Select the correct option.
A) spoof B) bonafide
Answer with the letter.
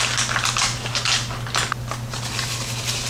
B